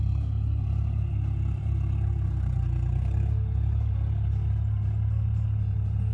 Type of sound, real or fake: real